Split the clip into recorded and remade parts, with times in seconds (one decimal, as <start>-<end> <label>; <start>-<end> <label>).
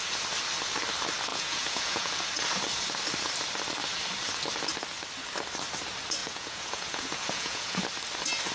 0.0-1.3 recorded; 1.3-2.1 remade; 2.1-6.2 recorded; 6.2-7.8 remade; 7.8-8.5 recorded